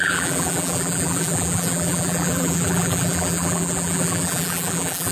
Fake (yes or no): yes